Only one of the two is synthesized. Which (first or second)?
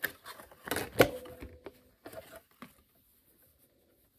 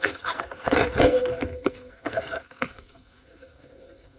second